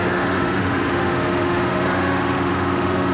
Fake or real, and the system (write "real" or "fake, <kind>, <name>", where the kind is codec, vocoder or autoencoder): fake, autoencoder, DAC-VAE